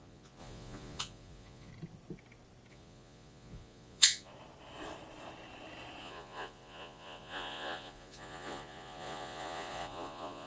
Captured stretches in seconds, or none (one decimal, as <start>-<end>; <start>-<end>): 1.7-2.7; 4.3-6.0